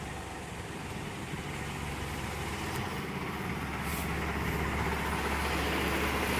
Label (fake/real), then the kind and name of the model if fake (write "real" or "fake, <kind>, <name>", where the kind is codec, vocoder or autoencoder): real